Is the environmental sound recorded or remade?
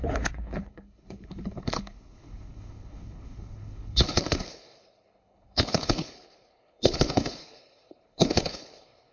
remade